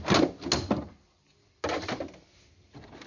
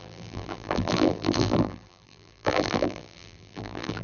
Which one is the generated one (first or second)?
second